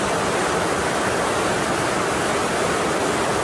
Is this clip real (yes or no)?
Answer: yes